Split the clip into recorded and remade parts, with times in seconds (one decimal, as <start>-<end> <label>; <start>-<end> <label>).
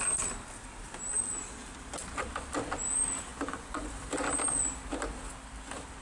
0.0-3.3 recorded; 3.3-3.9 remade; 3.9-6.0 recorded